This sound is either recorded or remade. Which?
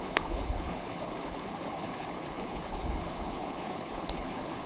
remade